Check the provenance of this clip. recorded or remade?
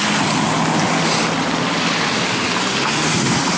recorded